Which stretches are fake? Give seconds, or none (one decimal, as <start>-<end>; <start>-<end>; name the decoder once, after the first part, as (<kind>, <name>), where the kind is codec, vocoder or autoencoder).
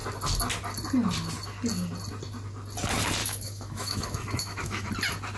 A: 3.2-4.9 (autoencoder, DAC-VAE)